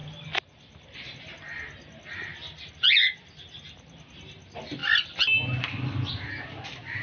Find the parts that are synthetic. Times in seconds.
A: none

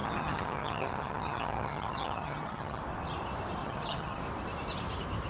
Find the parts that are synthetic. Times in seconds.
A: 0.0-2.8 (vocoder, HiFi-GAN); 3.6-4.2